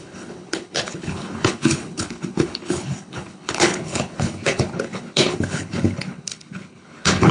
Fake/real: fake